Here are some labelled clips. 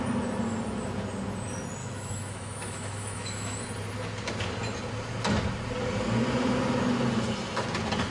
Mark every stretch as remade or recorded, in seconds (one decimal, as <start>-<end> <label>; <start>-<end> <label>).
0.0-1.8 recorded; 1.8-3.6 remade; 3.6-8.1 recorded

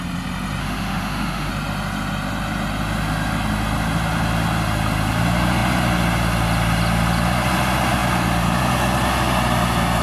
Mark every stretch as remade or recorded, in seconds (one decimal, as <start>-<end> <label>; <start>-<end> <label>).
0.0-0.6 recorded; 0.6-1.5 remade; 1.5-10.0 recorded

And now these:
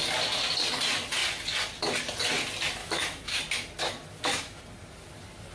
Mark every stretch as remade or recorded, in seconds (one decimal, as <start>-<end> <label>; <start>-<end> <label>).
0.0-2.8 recorded; 2.8-3.4 remade; 3.4-4.1 recorded; 4.1-4.6 remade; 4.6-5.5 recorded

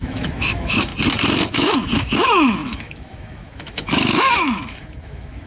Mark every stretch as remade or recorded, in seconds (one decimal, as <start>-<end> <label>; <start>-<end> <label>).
0.0-0.9 remade; 0.9-1.5 recorded; 1.5-5.5 remade